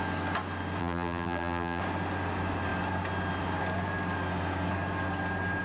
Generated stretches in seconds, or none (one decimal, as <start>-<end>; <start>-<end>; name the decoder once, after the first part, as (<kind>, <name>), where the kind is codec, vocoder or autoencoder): 0.8-1.8 (vocoder, BigVGAN v2)